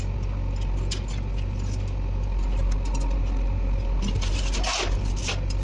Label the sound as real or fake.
real